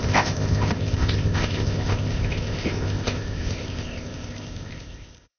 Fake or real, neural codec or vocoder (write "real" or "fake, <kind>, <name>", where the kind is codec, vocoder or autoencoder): fake, codec, ZipCodec